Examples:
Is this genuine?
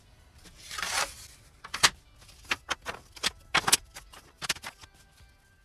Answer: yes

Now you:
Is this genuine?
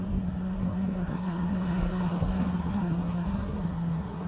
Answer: no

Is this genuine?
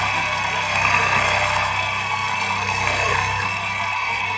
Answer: no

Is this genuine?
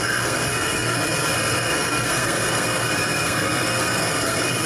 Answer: no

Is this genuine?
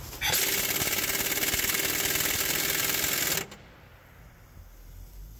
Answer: yes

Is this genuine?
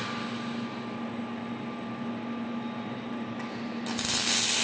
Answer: yes